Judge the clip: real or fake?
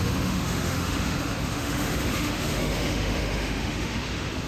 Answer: fake